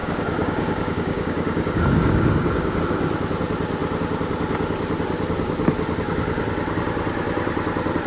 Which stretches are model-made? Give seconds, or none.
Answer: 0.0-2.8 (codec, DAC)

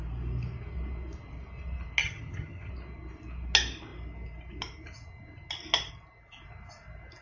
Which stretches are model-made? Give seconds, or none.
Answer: 2.0-2.7 (vocoder, HiFi-GAN)

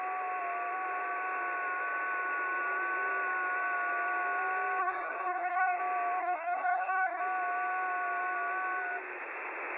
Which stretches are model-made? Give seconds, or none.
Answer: 4.8-5.8 (codec, SNAC); 6.2-7.2

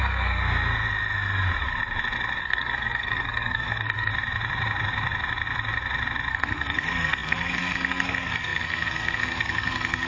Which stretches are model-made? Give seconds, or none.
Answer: 0.0-0.4 (codec, SNAC); 2.4-4.1; 6.3-10.1

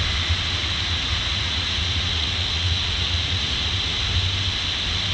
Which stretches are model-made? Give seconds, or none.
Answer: 0.6-3.7 (vocoder, Vocos)

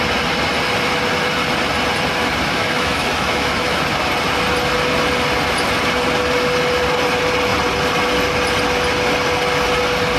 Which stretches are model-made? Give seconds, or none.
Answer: 2.5-3.8 (autoencoder, DAC-VAE)

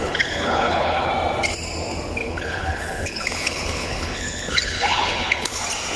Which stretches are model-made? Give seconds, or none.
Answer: 0.0-1.1 (codec, HILCodec); 2.2-5.6